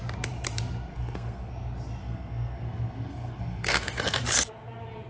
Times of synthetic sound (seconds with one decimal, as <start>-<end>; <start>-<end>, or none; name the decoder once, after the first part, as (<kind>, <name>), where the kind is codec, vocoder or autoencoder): 0.9-1.5 (codec, SNAC); 2.0-4.2